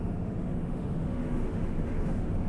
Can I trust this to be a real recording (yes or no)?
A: no